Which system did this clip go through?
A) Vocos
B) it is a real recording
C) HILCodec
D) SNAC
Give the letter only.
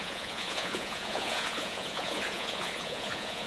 A